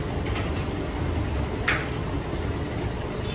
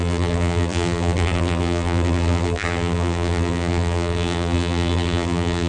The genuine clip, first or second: first